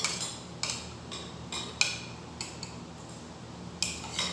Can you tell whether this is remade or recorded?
recorded